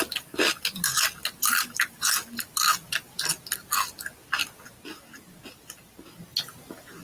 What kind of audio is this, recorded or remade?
recorded